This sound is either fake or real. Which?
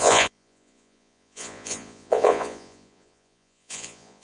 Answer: fake